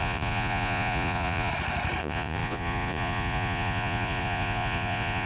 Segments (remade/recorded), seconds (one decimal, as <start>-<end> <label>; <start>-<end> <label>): 0.0-1.5 remade; 1.5-2.0 recorded; 2.0-5.3 remade